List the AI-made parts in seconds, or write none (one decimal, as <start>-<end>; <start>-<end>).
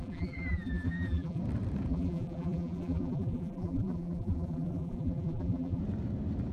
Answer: 0.0-1.4; 1.9-5.8